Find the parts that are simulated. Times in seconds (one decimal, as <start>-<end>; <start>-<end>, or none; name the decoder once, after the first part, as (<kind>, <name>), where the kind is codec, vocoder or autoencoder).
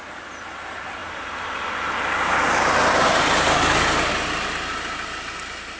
none